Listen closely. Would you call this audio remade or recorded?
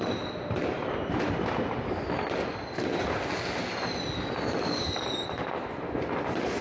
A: recorded